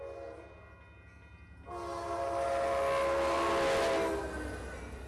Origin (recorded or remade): recorded